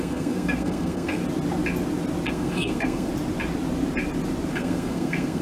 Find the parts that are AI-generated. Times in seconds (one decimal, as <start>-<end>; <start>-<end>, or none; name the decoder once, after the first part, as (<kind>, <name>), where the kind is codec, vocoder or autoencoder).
0.0-1.2 (codec, SNAC); 2.3-3.1; 4.5-5.4